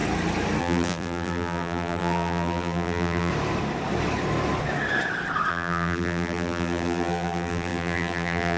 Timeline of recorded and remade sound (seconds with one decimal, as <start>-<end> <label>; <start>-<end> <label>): 0.0-0.6 recorded; 0.6-3.3 remade; 3.3-5.5 recorded; 5.5-8.6 remade